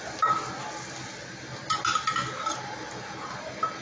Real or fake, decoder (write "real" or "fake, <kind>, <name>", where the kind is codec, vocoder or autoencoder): real